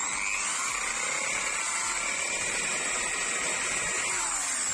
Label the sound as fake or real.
real